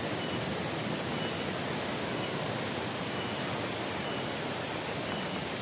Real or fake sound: real